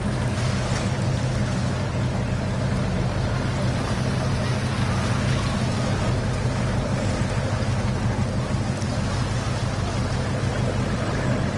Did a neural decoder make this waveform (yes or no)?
no